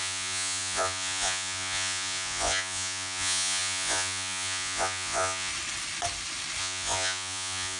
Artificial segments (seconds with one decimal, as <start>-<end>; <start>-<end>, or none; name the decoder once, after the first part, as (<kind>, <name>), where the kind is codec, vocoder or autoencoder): 0.0-5.5 (vocoder, Vocos); 6.6-7.8